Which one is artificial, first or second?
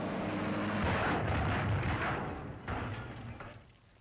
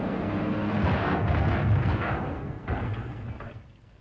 second